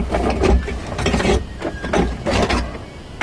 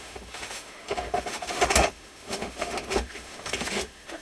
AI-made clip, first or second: second